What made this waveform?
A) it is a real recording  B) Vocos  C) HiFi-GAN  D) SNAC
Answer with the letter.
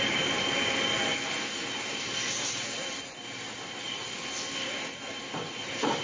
A